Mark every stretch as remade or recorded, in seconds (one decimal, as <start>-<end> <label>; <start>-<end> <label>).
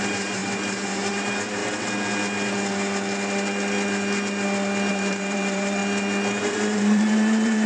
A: 0.0-1.6 remade; 1.6-4.9 recorded; 4.9-5.8 remade; 5.8-6.4 recorded; 6.4-7.7 remade